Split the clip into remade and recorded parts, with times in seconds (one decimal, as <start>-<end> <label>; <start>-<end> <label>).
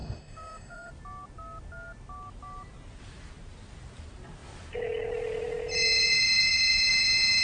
0.0-0.9 remade; 0.9-7.4 recorded